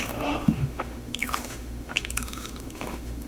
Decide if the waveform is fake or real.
fake